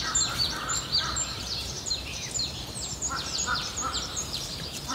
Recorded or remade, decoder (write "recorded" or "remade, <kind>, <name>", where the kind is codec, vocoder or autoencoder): remade, vocoder, BigVGAN v2